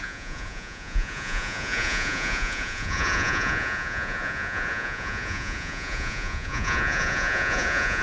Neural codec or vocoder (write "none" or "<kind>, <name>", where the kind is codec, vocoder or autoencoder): vocoder, Vocos